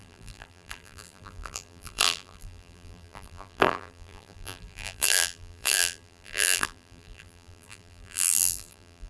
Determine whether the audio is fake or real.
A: fake